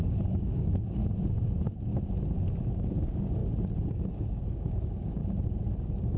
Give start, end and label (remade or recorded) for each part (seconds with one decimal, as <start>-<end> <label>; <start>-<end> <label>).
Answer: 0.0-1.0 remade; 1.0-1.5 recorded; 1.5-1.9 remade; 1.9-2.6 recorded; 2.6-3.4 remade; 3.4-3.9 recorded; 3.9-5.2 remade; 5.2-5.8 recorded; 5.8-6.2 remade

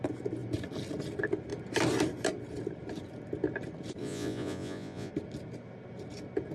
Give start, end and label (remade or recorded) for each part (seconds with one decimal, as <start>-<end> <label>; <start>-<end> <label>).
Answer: 0.0-4.0 recorded; 4.0-5.1 remade; 5.1-6.5 recorded

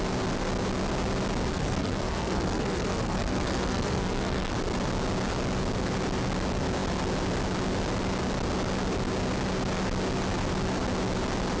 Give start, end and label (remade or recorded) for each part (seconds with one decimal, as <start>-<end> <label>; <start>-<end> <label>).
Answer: 0.0-1.5 recorded; 1.5-4.5 remade; 4.5-11.6 recorded